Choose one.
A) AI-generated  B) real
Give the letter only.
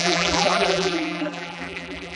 A